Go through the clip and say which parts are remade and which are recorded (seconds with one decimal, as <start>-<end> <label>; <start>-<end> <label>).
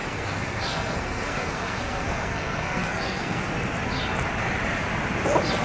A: 0.0-3.4 remade; 3.4-5.6 recorded